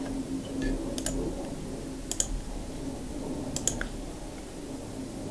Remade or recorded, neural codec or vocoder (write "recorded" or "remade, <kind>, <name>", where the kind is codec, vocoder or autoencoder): recorded